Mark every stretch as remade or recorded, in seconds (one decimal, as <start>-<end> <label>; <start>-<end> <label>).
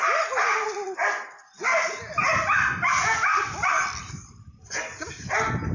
0.0-5.7 recorded